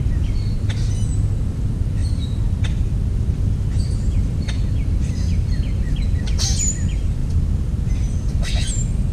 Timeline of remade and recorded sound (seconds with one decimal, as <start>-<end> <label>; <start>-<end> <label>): 0.0-2.0 recorded; 2.0-6.4 remade; 6.4-7.2 recorded; 7.2-8.3 remade; 8.3-9.1 recorded